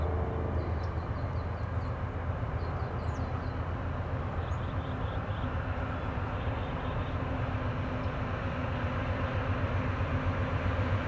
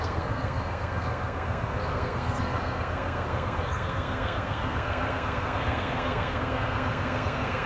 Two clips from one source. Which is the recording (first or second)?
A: first